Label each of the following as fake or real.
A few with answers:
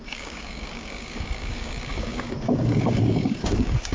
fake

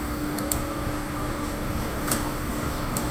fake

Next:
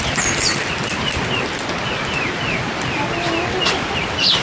real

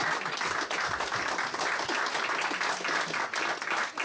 real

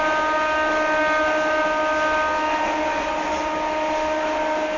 real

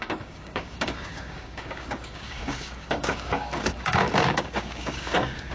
fake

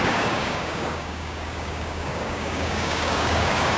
fake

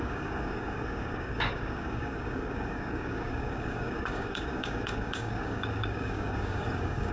fake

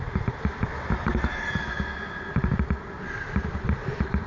real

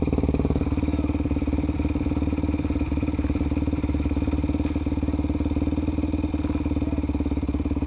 real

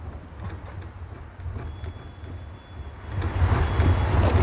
real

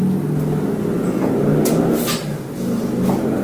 real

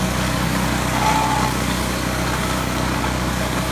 fake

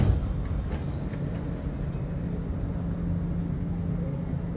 real